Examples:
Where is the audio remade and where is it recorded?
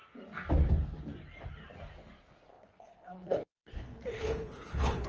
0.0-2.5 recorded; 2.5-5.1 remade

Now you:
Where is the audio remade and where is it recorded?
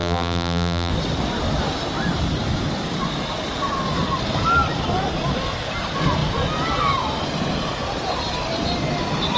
0.0-0.9 remade; 0.9-9.4 recorded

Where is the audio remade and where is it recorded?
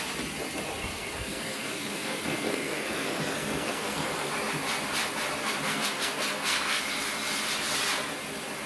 0.0-0.8 recorded; 0.8-4.3 remade; 4.3-5.4 recorded; 5.4-6.8 remade; 6.8-8.7 recorded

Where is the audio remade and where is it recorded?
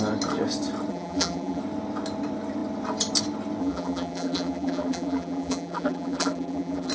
0.0-0.9 recorded; 0.9-1.6 remade; 1.6-3.6 recorded; 3.6-6.9 remade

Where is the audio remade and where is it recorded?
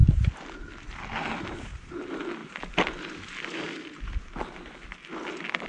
0.0-5.7 recorded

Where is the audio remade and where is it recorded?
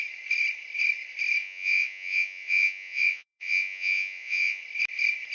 0.0-1.4 recorded; 1.4-4.6 remade; 4.6-5.3 recorded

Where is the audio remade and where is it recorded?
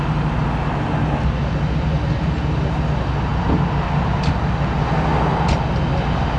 0.0-6.4 recorded